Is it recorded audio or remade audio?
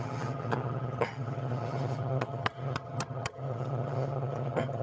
remade